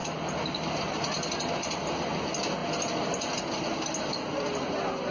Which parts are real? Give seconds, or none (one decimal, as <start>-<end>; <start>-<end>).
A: 0.0-5.1